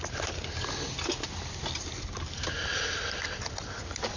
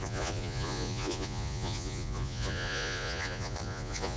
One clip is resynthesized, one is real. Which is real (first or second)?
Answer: first